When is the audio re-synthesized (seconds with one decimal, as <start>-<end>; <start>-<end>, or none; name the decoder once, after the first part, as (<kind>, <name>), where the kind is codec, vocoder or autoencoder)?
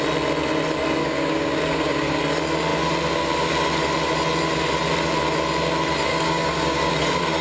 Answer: 1.0-2.2 (codec, DAC); 6.1-6.9